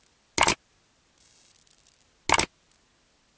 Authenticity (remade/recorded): recorded